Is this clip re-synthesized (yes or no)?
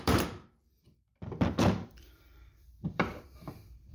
yes